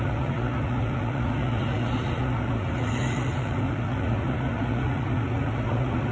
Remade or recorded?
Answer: remade